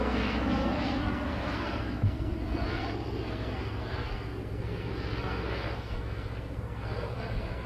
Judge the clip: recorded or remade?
remade